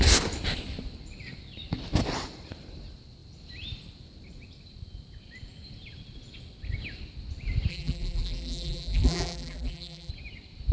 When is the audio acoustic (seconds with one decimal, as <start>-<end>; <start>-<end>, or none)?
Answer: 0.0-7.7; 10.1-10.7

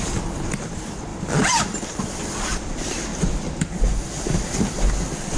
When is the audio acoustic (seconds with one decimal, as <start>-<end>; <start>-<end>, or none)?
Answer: 3.1-5.4

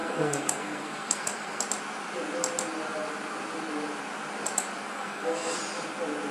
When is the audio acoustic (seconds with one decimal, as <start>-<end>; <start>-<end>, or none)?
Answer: 1.6-4.9; 5.6-6.3